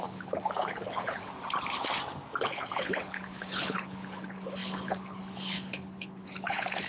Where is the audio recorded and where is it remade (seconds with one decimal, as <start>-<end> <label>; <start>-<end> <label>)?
0.0-1.2 remade; 1.2-2.4 recorded; 2.4-6.9 remade